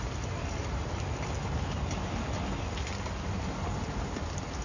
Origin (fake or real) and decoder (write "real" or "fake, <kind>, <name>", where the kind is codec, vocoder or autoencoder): real